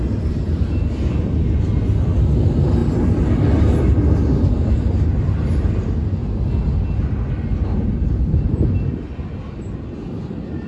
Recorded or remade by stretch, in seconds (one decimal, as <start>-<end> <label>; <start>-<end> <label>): 0.0-10.7 recorded